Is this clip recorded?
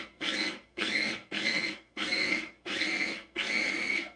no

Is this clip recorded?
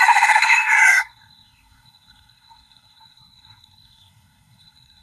no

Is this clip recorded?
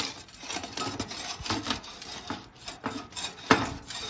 yes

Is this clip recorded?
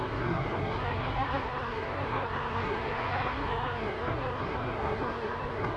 no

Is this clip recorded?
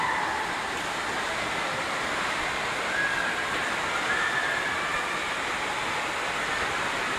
yes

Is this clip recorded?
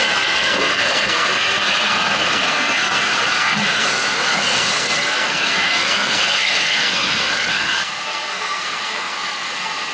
no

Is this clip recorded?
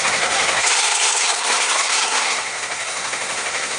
no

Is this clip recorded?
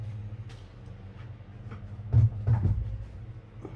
yes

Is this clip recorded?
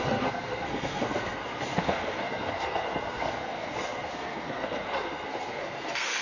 no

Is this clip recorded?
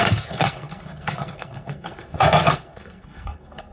no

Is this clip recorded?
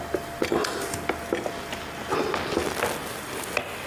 yes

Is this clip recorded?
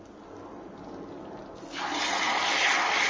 yes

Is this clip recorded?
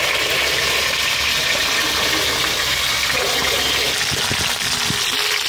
yes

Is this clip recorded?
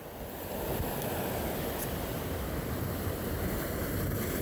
yes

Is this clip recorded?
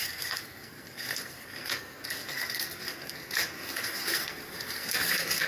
no